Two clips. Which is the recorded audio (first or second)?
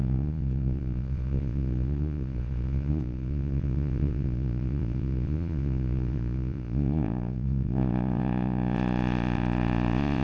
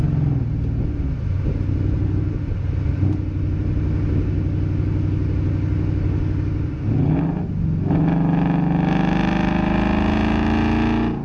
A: second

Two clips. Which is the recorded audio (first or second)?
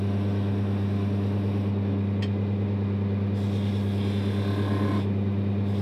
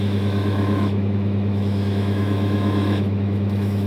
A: first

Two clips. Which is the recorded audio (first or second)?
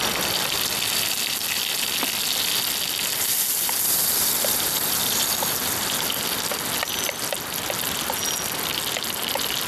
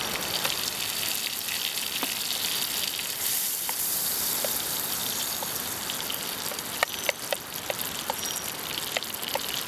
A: first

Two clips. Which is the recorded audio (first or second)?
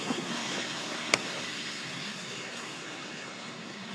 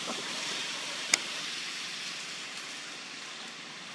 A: second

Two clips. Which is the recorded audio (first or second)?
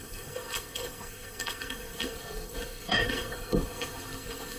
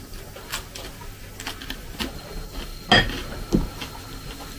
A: second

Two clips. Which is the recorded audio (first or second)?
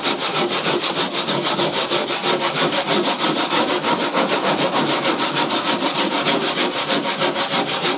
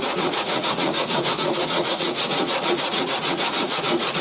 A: first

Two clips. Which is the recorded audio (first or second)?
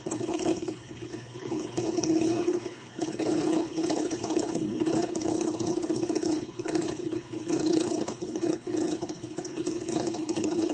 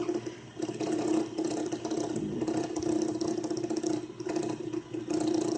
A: second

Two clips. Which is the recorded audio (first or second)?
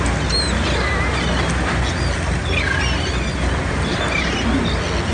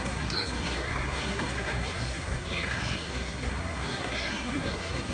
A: first